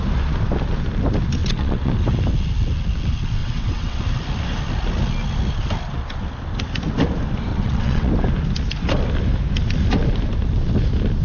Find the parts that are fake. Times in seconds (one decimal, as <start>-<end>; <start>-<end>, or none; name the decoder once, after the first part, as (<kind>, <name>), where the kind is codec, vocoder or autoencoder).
1.4-1.9 (vocoder, WaveNeXt); 3.4-4.0; 7.5-8.1